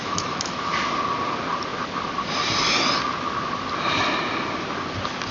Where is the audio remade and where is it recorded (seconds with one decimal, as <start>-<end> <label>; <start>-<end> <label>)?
0.0-0.7 remade; 0.7-5.3 recorded